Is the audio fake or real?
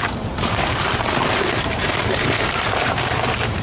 fake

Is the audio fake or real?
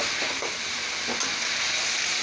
real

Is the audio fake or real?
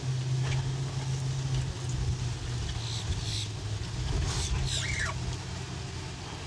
real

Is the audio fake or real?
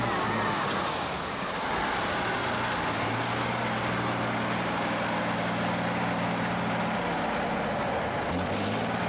real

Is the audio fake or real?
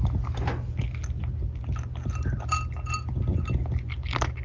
real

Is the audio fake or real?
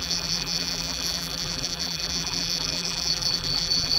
fake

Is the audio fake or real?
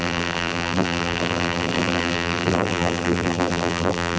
fake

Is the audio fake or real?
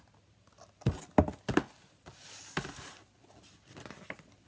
real